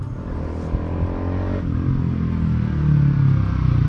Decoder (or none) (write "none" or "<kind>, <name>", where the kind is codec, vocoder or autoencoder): none